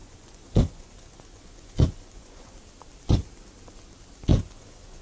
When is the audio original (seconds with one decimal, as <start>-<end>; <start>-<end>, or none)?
2.5-4.3